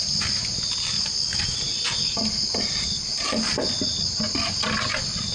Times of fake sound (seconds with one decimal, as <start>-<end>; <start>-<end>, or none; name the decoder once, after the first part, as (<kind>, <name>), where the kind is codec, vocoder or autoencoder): none